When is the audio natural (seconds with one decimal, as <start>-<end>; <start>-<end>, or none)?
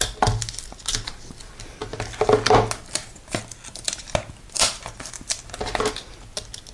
0.0-6.7